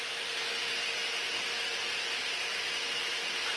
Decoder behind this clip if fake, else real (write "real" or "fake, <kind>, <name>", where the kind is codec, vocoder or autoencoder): real